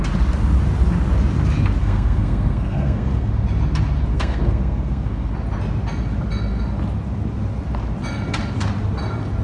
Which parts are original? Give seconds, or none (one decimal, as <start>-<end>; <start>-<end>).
0.0-1.8; 3.3-4.1; 5.3-9.4